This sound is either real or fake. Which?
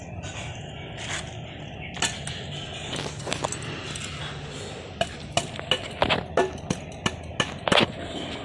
real